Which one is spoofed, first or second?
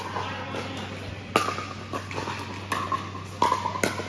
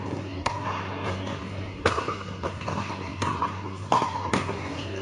second